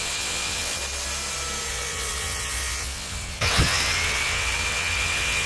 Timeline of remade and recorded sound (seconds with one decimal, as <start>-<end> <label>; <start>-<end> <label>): 0.0-0.8 remade; 0.8-1.7 recorded; 1.7-5.5 remade